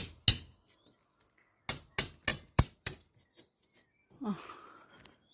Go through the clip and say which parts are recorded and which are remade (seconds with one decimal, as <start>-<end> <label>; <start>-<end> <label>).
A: 0.0-2.3 recorded; 2.3-4.0 remade; 4.0-5.3 recorded